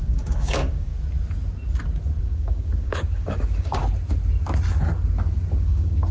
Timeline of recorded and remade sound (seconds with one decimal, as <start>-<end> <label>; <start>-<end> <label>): 0.0-0.9 remade; 0.9-2.2 recorded; 2.2-3.8 remade; 3.8-5.5 recorded; 5.5-6.1 remade